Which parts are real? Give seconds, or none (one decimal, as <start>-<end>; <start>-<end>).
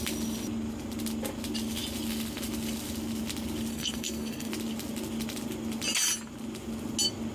0.0-3.7; 4.5-7.3